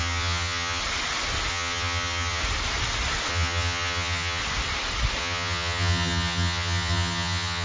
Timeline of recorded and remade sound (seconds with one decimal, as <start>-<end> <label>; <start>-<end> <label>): 0.0-0.8 remade; 0.8-1.5 recorded; 1.5-2.4 remade; 2.4-3.3 recorded; 3.3-4.4 remade; 4.4-5.2 recorded; 5.2-7.6 remade